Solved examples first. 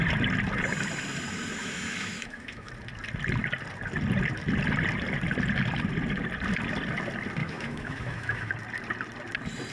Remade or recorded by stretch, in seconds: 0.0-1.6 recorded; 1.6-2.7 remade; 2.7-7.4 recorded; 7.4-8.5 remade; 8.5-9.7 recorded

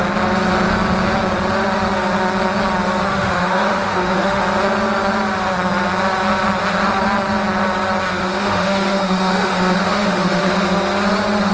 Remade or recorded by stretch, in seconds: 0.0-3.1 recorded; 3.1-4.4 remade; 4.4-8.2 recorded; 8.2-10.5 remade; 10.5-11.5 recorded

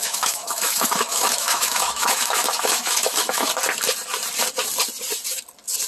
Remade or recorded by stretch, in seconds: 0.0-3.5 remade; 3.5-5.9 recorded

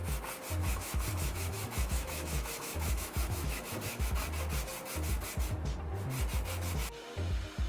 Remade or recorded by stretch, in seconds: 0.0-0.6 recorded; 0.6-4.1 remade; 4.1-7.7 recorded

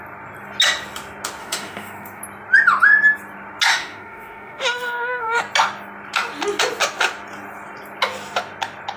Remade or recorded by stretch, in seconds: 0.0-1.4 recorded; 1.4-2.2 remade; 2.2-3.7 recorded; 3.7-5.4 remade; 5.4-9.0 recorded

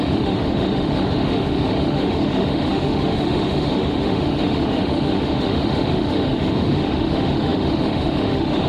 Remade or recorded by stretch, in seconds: 0.0-8.7 remade

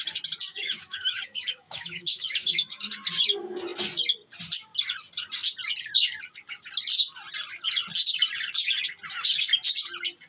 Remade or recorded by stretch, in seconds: 0.0-0.5 recorded; 0.5-2.9 remade; 2.9-10.3 recorded

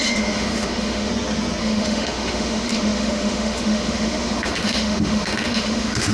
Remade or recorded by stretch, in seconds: 0.0-1.1 remade; 1.1-1.6 recorded; 1.6-6.1 remade